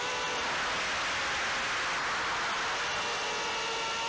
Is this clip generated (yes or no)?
no